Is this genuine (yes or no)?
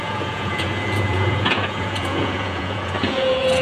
no